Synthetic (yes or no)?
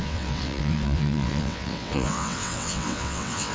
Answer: yes